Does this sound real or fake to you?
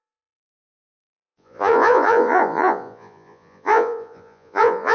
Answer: fake